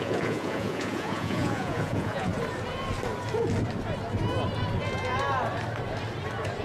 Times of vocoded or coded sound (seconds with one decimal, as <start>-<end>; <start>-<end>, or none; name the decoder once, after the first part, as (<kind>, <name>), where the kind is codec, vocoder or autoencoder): 0.0-2.3 (vocoder, Vocos)